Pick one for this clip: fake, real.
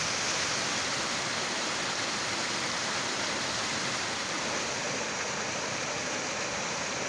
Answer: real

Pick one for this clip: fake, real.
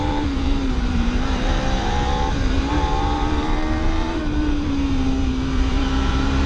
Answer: fake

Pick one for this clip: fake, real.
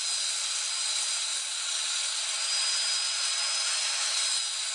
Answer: real